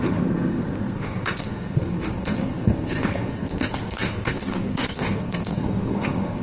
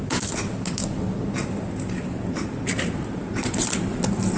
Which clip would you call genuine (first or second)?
second